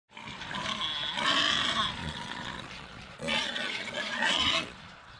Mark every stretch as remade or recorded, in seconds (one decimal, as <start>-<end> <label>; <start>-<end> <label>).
0.0-2.0 recorded; 2.0-5.2 remade

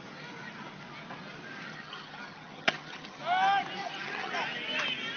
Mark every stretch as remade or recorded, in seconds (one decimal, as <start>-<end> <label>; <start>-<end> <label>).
0.0-1.7 recorded; 1.7-3.2 remade; 3.2-3.8 recorded; 3.8-4.3 remade; 4.3-5.2 recorded

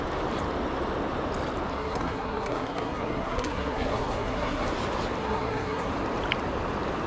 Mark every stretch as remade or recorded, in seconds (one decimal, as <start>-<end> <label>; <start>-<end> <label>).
0.0-1.7 recorded; 1.7-4.7 remade; 4.7-5.2 recorded; 5.2-5.9 remade; 5.9-7.1 recorded

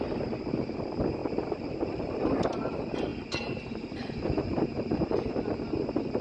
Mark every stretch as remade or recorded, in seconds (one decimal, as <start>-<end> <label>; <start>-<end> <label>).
0.0-3.1 recorded; 3.1-4.8 remade; 4.8-6.2 recorded

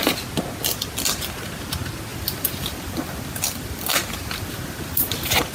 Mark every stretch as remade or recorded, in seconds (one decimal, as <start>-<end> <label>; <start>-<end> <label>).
0.0-2.1 recorded; 2.1-5.5 remade

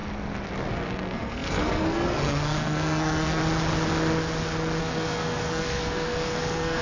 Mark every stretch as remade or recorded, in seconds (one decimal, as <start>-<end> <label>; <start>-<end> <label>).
0.0-0.7 recorded; 0.7-3.4 remade; 3.4-4.8 recorded; 4.8-6.8 remade

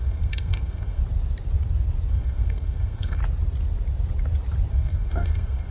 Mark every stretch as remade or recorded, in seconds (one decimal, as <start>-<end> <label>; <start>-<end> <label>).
0.0-1.0 remade; 1.0-2.1 recorded; 2.1-3.2 remade; 3.2-4.7 recorded; 4.7-5.7 remade

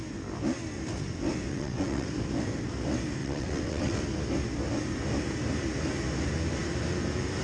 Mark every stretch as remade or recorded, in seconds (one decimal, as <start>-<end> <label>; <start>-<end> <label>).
0.0-1.5 recorded; 1.5-2.1 remade; 2.1-3.2 recorded; 3.2-4.0 remade; 4.0-7.4 recorded